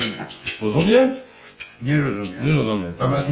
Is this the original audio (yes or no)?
no